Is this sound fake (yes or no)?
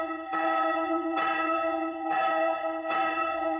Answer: yes